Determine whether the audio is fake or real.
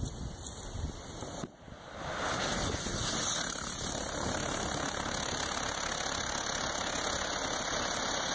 real